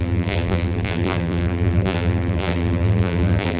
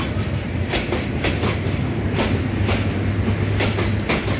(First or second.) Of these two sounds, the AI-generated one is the first